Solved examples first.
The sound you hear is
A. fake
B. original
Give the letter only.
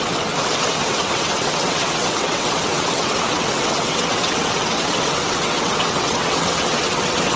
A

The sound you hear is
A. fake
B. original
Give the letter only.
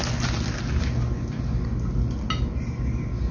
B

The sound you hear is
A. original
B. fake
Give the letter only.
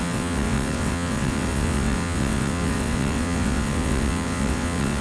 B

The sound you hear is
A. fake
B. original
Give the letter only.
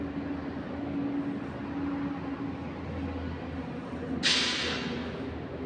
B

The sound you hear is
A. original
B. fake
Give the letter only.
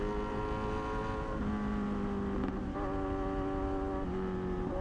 A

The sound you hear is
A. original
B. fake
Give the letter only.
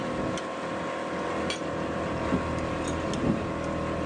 A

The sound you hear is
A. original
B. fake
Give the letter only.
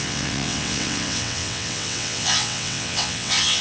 B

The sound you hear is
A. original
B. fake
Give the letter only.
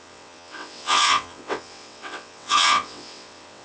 B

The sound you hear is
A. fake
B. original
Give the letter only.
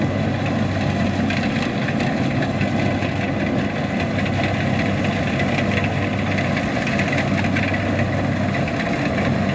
B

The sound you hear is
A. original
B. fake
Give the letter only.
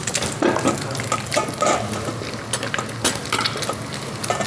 A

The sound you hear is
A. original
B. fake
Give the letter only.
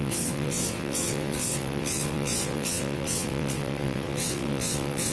B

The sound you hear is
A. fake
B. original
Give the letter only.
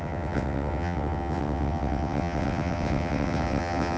A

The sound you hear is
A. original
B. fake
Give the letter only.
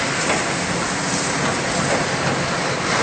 A